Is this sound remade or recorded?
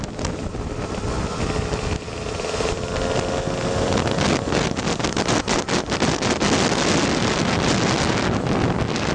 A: recorded